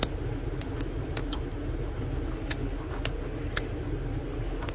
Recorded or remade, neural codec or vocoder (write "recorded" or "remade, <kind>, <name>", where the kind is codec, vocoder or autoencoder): recorded